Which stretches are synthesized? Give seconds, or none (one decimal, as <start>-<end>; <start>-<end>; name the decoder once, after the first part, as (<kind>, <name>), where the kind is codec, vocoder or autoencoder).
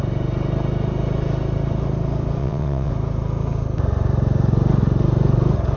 2.4-2.9 (vocoder, WaveNeXt)